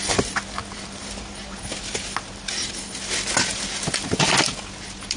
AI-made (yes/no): no